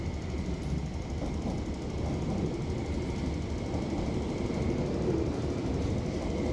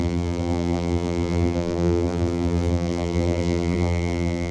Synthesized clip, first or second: second